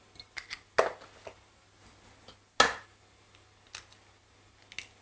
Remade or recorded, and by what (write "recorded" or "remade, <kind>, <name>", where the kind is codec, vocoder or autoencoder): recorded